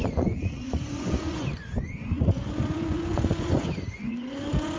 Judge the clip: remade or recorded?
remade